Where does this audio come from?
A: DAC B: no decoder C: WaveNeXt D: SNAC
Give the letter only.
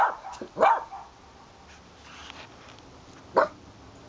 B